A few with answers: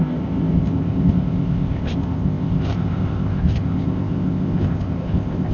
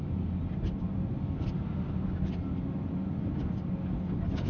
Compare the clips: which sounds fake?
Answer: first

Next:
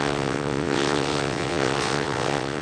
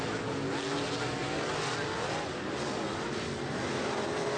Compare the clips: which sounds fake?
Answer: first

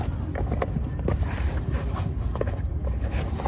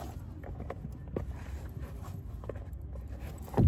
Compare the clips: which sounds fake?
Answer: first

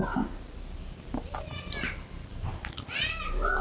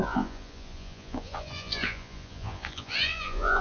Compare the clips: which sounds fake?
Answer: second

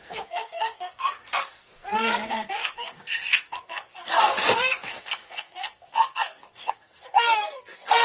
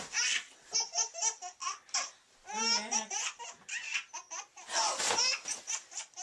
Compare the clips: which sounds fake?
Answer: first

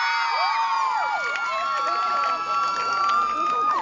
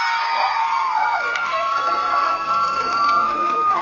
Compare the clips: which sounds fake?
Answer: second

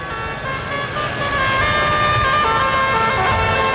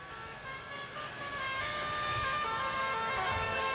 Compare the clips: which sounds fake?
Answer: second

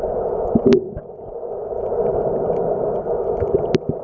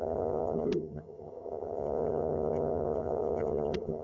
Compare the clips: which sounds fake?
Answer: second